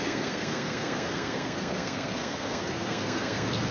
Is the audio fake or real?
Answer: fake